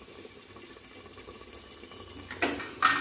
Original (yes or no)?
yes